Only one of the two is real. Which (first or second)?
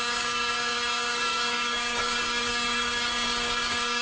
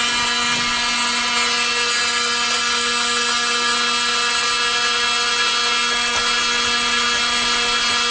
second